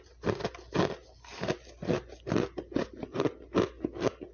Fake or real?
real